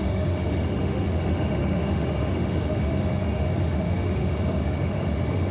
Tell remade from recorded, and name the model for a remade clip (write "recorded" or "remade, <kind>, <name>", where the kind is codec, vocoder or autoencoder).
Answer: remade, autoencoder, DAC-VAE